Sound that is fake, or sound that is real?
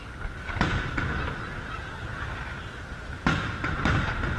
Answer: real